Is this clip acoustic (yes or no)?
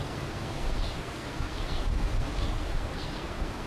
no